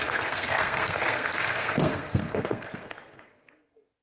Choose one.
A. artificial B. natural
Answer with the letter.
A